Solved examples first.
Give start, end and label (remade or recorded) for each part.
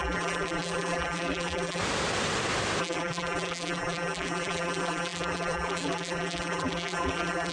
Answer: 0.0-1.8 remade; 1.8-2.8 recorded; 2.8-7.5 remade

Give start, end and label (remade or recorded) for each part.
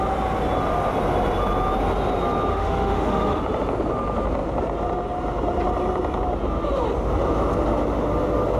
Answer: 0.0-2.5 recorded; 2.5-3.4 remade; 3.4-8.6 recorded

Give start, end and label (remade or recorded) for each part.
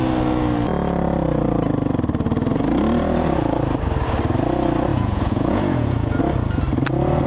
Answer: 0.0-4.9 recorded; 4.9-6.2 remade; 6.2-7.3 recorded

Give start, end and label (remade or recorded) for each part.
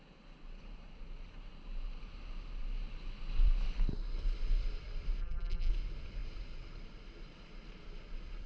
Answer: 0.0-5.2 recorded; 5.2-5.7 remade; 5.7-8.5 recorded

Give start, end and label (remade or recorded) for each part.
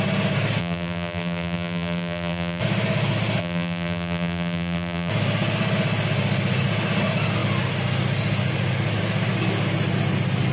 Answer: 0.0-0.6 recorded; 0.6-2.6 remade; 2.6-3.4 recorded; 3.4-5.1 remade; 5.1-10.5 recorded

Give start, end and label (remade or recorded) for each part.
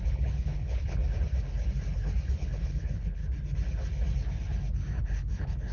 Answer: 0.0-1.0 remade; 1.0-2.3 recorded; 2.3-3.2 remade; 3.2-5.0 recorded; 5.0-5.7 remade